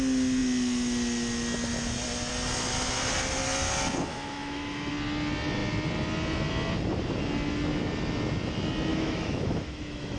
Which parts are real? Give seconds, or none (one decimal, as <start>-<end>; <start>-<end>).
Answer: 0.0-4.1; 4.9-8.9